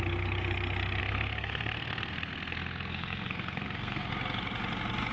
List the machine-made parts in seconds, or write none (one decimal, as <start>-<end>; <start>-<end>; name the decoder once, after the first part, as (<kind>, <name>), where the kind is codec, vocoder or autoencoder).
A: 1.0-4.1 (codec, SNAC)